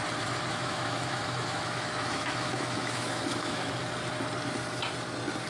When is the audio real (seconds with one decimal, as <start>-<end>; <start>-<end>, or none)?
0.0-0.5; 3.8-5.5